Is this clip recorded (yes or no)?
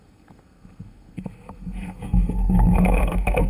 no